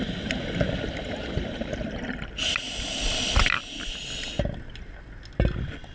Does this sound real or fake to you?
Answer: real